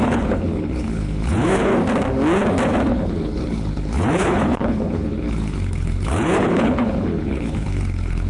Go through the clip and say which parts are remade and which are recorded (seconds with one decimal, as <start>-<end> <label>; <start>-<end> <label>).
0.0-1.7 remade; 1.7-2.9 recorded; 2.9-8.3 remade